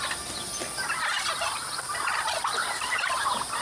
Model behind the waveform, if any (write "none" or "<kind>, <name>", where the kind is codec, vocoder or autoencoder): none